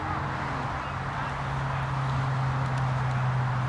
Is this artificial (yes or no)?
no